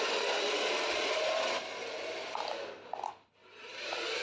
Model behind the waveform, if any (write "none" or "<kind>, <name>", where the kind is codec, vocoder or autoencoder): none